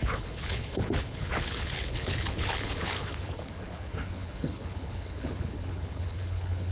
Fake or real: fake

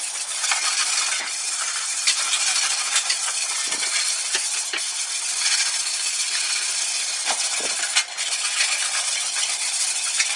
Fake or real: real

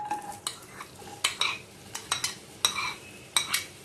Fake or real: real